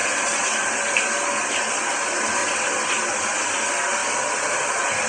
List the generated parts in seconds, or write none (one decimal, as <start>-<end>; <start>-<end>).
2.4-3.2; 4.0-5.1